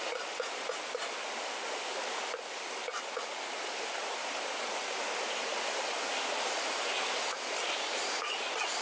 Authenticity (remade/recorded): recorded